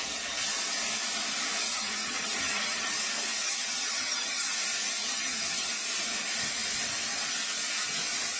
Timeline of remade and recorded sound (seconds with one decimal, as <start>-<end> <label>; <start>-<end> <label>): 0.0-1.7 recorded; 1.7-2.9 remade; 2.9-3.3 recorded; 3.3-4.5 remade; 4.5-5.0 recorded; 5.0-5.7 remade; 5.7-8.4 recorded